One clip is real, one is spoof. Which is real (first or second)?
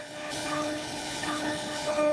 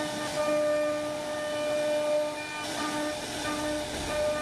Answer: second